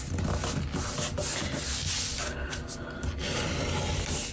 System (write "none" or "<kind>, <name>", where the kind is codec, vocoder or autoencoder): none